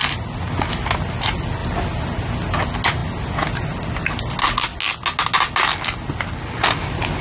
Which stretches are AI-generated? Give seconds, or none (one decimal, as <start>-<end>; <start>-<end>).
none